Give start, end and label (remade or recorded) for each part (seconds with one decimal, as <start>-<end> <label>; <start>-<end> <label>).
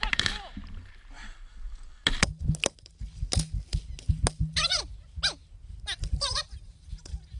0.0-1.2 remade; 1.2-2.8 recorded; 2.8-3.3 remade; 3.3-6.1 recorded; 6.1-7.4 remade